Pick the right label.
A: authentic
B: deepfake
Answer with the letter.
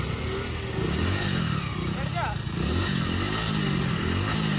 A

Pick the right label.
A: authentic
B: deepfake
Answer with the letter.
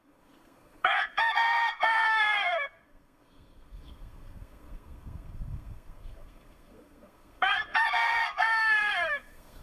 B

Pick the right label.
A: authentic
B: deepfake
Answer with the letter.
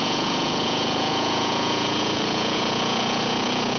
B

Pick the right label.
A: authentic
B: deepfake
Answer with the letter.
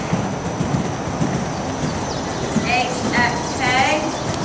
A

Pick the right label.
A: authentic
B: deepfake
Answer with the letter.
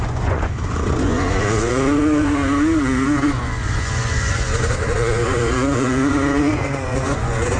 B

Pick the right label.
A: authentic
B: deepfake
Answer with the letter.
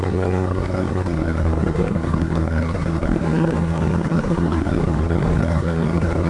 B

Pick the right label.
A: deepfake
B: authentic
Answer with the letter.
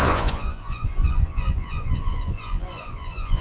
A